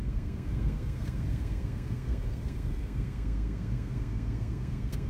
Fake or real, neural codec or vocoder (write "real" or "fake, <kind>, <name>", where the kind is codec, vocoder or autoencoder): fake, codec, SNAC